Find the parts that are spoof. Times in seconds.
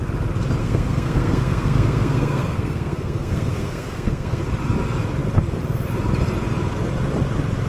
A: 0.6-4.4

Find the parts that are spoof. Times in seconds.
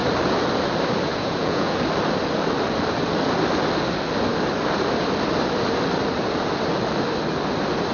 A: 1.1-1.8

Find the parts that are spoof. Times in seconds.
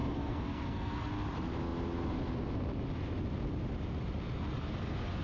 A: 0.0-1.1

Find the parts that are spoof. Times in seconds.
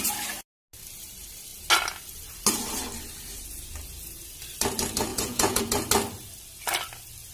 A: 5.1-5.6